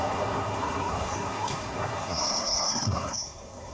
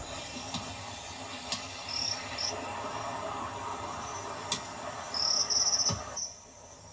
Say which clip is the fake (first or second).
first